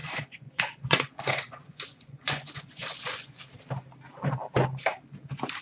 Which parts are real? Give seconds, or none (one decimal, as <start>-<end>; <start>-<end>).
3.4-5.6